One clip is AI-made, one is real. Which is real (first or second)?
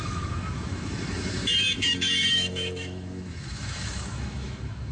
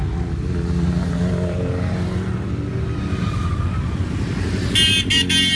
second